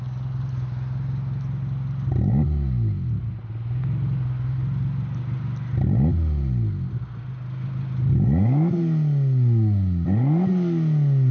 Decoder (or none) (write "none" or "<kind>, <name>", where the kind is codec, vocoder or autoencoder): none